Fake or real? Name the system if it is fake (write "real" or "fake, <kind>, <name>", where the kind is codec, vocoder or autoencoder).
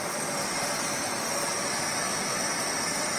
real